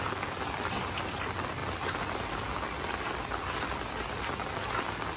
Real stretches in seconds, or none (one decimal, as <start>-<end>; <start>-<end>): 0.0-5.2